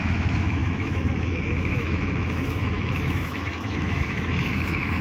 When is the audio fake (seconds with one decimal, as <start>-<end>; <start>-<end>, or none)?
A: 0.0-5.0